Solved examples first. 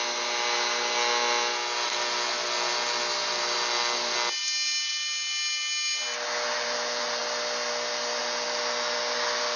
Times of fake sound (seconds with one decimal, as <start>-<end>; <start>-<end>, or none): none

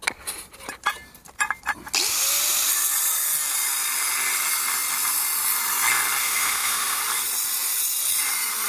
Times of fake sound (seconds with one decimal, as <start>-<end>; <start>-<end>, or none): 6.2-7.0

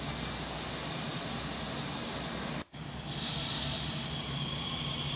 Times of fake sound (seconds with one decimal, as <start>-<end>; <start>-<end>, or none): none